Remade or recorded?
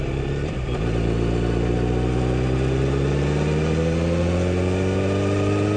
recorded